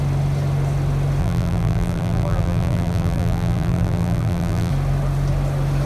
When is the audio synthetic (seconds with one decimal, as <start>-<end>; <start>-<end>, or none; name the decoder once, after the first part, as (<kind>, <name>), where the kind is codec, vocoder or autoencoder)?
1.2-4.7 (vocoder, BigVGAN v2)